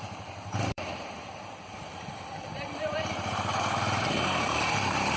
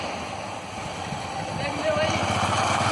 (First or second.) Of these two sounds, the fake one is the first